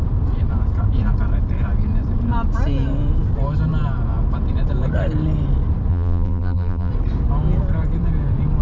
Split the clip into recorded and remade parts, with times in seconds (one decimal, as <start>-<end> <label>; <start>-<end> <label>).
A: 0.0-5.9 recorded; 5.9-6.9 remade; 6.9-8.6 recorded